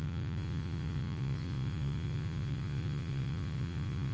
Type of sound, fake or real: fake